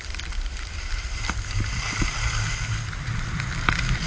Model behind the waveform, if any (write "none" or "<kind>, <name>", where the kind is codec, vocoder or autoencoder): vocoder, BigVGAN v2